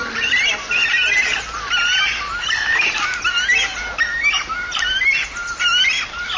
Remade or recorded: recorded